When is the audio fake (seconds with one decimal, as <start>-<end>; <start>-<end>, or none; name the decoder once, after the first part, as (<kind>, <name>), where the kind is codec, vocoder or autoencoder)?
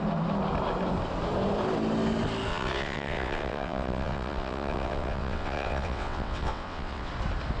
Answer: 2.5-7.1 (vocoder, WaveNeXt)